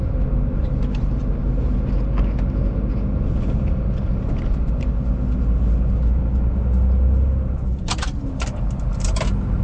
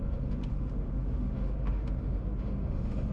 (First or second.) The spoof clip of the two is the second